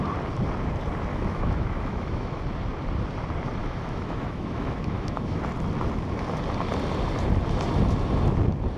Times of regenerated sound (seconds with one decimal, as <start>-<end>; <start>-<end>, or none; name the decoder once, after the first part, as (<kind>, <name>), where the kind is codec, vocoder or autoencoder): 1.1-2.4 (autoencoder, DAC-VAE); 3.6-5.4